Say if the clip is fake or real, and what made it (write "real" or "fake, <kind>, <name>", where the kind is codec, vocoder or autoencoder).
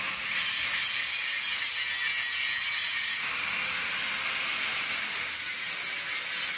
real